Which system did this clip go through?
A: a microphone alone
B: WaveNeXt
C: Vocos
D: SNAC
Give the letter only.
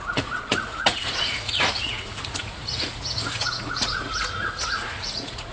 C